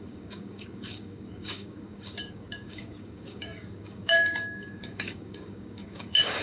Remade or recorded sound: remade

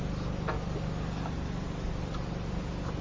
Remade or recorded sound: recorded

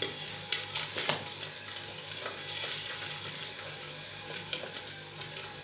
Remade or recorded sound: recorded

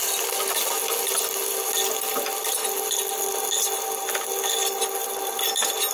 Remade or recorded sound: recorded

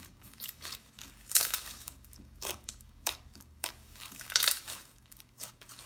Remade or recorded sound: remade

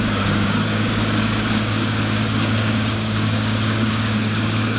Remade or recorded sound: remade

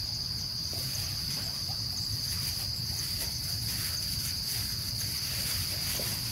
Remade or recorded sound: recorded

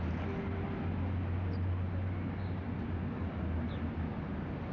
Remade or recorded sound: recorded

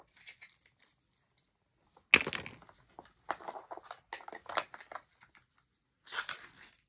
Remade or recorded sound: recorded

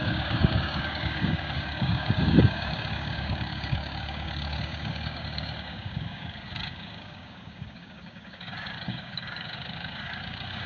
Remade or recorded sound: remade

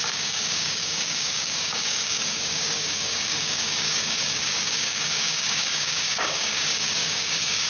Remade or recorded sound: remade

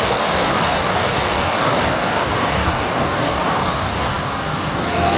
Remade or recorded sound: remade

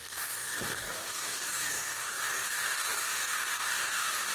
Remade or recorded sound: remade